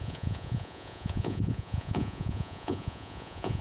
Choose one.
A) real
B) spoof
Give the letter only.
B